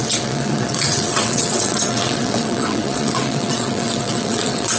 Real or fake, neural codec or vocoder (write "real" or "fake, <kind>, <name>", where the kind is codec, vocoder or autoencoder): fake, vocoder, WaveNeXt